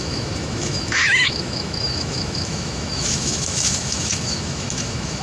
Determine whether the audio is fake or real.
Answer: fake